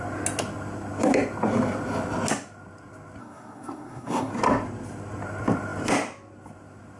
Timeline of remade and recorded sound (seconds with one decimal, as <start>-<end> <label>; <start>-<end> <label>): 0.0-3.2 recorded; 3.2-4.3 remade; 4.3-7.0 recorded